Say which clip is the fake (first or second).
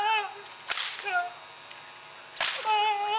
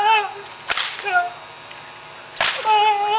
second